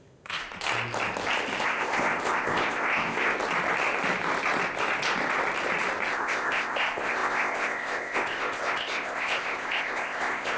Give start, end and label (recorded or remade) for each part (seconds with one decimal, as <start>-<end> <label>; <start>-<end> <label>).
0.0-0.4 remade; 0.4-1.6 recorded; 1.6-3.3 remade; 3.3-6.1 recorded; 6.1-10.6 remade